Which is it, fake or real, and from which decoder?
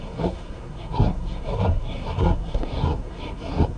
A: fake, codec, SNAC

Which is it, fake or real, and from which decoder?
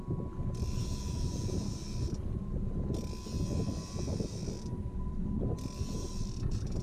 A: real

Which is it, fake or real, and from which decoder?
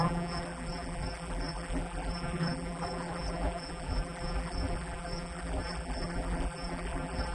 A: fake, vocoder, BigVGAN v2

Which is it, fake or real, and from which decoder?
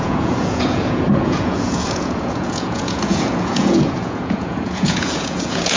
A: fake, vocoder, Vocos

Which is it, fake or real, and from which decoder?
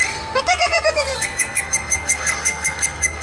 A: fake, codec, SNAC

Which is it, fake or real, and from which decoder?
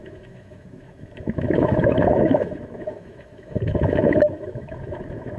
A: fake, autoencoder, DAC-VAE